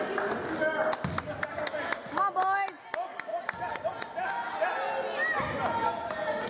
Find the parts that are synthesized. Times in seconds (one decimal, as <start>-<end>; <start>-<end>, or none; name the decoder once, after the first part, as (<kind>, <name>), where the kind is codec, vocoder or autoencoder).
none